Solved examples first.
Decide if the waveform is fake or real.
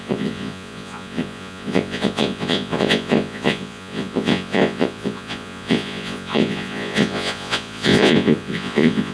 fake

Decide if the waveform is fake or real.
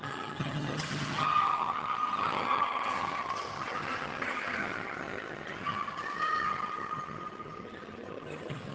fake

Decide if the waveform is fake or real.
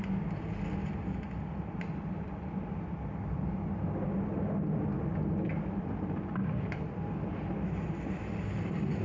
real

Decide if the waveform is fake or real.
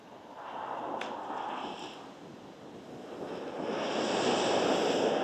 real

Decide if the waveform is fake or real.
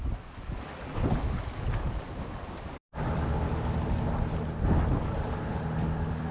real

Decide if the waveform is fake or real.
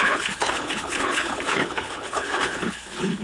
fake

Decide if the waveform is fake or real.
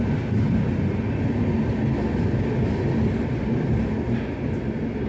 real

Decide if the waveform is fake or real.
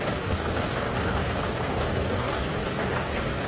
fake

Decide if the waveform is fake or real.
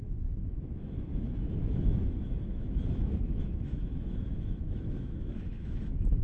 fake